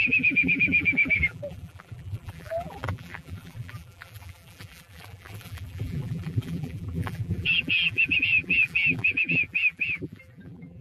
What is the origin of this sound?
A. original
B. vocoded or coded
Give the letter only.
B